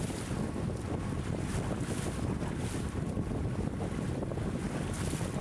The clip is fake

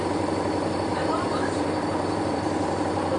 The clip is fake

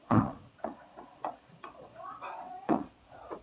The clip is fake